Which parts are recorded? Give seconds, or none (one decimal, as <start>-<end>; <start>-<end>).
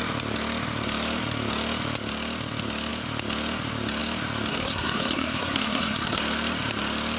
0.0-4.5; 6.2-7.2